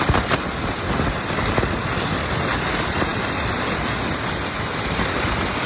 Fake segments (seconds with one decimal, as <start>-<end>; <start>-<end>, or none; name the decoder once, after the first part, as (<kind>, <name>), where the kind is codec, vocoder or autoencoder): none